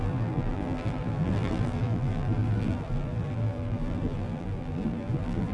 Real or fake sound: fake